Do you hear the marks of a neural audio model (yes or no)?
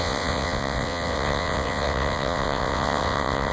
yes